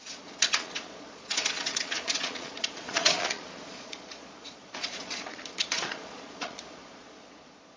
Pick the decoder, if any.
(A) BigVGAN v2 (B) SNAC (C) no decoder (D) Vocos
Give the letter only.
D